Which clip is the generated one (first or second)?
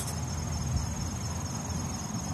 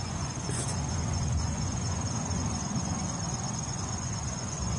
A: second